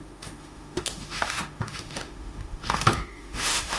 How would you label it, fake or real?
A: fake